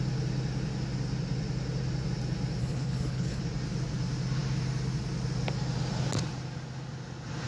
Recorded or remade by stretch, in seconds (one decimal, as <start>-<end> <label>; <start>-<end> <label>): 0.0-2.6 recorded; 2.6-3.4 remade; 3.4-7.5 recorded